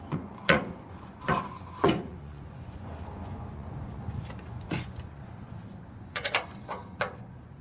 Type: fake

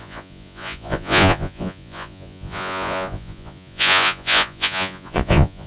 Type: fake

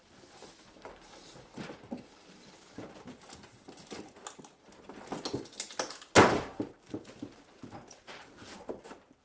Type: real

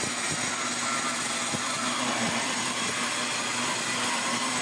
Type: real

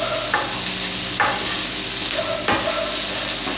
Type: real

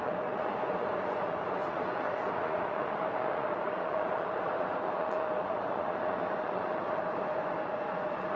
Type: fake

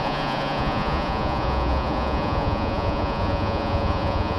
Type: fake